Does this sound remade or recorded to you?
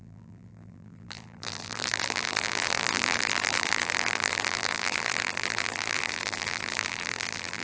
remade